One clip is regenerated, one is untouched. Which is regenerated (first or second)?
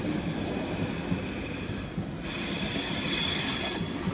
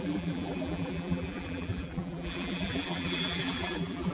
second